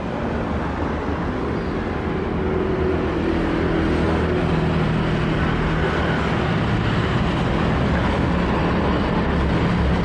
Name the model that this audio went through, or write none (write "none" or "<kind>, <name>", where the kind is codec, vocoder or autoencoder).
none